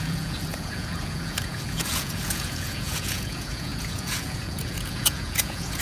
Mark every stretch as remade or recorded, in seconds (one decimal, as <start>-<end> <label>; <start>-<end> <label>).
0.0-5.8 remade